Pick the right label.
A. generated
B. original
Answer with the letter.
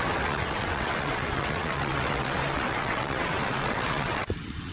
A